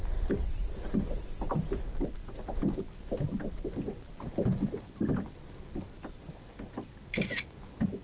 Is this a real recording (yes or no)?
yes